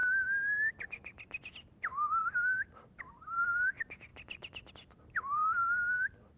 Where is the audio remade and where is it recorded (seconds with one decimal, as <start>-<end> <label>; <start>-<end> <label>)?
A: 0.0-6.4 recorded